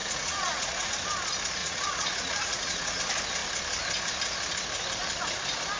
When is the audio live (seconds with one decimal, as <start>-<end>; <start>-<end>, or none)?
0.9-1.6; 3.0-5.8